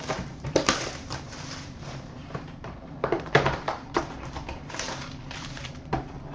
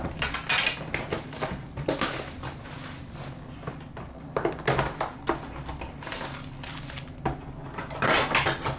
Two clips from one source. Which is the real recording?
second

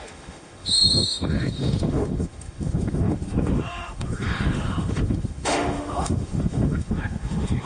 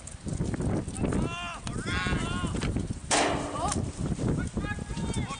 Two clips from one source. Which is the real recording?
second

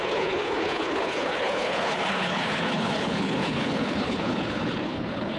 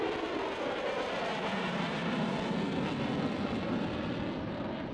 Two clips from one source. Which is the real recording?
second